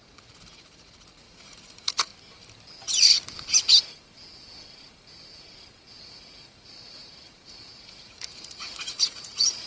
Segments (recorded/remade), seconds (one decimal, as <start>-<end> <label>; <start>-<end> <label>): 0.0-2.1 remade; 2.1-6.0 recorded; 6.0-9.7 remade